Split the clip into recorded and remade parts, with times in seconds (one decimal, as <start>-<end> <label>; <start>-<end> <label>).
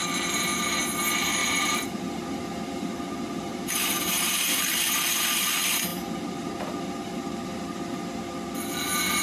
0.0-1.4 recorded; 1.4-5.4 remade; 5.4-5.9 recorded; 5.9-8.0 remade; 8.0-9.2 recorded